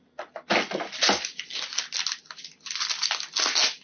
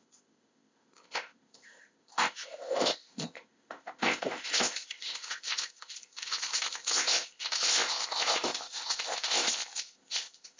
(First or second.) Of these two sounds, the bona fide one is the first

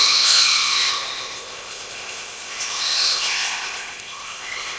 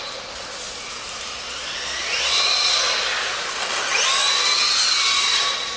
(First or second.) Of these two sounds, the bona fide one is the second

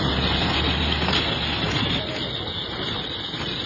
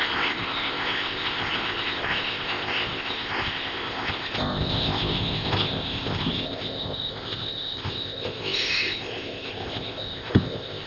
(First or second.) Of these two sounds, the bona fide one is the first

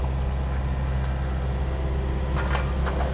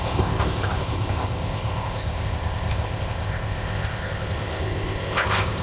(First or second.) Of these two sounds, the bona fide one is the first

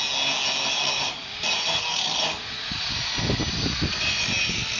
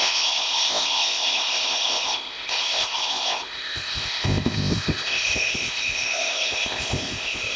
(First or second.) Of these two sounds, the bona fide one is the first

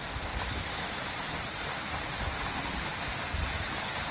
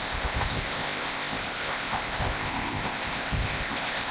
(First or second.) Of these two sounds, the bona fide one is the first